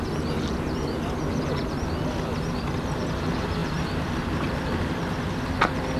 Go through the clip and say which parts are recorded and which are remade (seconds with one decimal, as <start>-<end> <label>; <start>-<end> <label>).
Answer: 0.0-6.0 recorded